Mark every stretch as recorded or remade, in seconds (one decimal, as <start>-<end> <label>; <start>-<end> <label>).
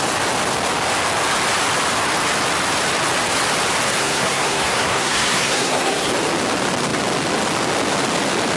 0.0-4.0 recorded; 4.0-6.1 remade; 6.1-8.6 recorded